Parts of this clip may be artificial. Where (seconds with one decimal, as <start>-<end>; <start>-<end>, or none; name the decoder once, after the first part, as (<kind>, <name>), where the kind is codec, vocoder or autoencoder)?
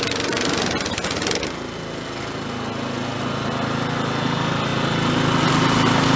none